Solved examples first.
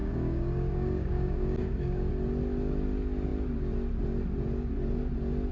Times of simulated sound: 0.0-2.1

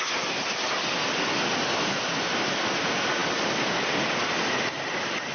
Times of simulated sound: none

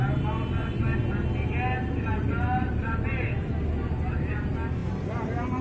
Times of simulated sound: 2.1-2.9; 4.8-5.6

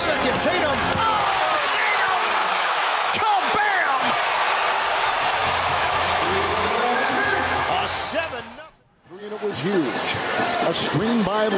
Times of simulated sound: 2.4-3.5; 5.4-8.0